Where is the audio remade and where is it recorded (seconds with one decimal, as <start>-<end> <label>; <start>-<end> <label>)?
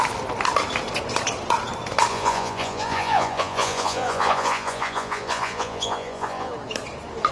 0.0-2.1 recorded; 2.1-6.5 remade; 6.5-7.3 recorded